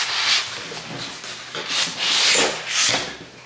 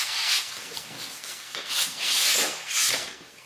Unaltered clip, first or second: first